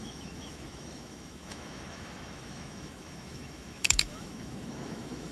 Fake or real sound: fake